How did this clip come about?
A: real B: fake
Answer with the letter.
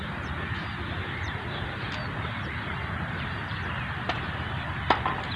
B